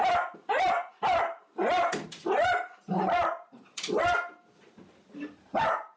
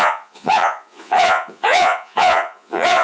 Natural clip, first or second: first